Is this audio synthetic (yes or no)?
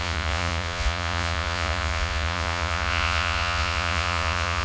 yes